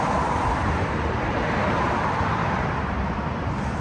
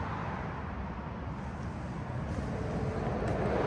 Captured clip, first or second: second